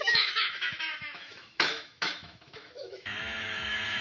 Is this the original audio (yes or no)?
no